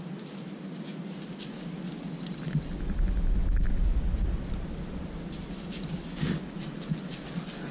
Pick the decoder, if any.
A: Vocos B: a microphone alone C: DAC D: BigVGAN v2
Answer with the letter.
B